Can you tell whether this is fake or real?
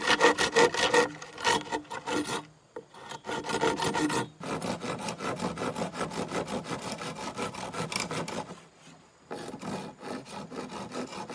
real